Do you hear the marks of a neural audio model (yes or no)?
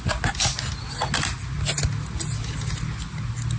no